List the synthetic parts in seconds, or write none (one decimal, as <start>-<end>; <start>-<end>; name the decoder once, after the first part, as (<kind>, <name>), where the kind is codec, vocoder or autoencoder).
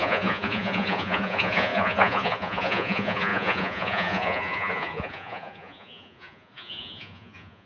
0.0-7.7 (vocoder, Vocos)